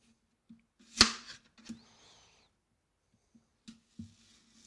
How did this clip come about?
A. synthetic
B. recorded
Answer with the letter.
B